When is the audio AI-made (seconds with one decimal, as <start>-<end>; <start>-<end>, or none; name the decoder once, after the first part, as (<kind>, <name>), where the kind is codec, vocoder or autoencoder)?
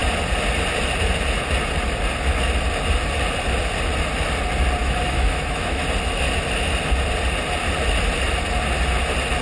4.8-5.8 (autoencoder, DAC-VAE)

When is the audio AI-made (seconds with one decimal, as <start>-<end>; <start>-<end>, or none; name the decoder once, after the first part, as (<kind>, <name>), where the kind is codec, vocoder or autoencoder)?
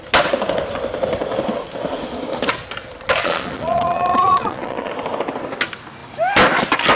3.2-4.9 (vocoder, Vocos)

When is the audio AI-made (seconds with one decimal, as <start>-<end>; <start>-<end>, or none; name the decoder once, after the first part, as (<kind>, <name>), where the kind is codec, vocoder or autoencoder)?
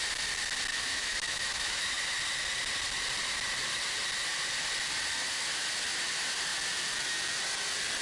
0.7-2.0 (autoencoder, DAC-VAE)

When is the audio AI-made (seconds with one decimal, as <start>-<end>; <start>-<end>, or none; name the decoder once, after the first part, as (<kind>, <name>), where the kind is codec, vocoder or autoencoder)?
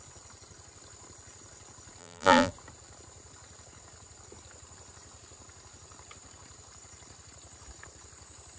2.0-2.5 (vocoder, BigVGAN v2)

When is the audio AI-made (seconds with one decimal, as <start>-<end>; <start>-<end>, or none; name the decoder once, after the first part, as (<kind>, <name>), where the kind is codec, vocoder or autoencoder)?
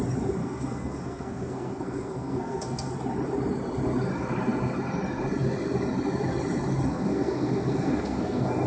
0.4-2.9 (codec, SNAC); 6.9-8.7